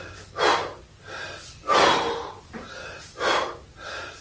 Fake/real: real